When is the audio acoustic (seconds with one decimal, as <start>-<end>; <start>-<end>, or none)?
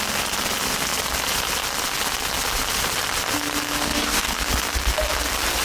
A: 0.0-3.8; 4.5-5.6